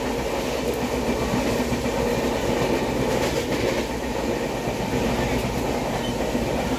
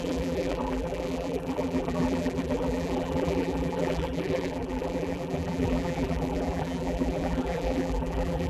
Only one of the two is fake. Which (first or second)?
second